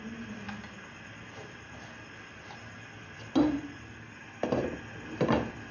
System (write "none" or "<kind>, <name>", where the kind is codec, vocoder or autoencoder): none